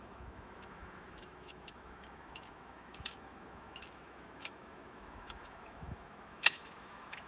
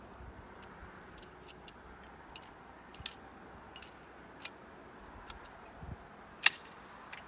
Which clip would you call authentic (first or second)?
second